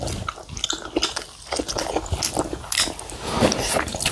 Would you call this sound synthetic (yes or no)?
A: no